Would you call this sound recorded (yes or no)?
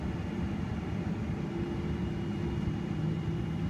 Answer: no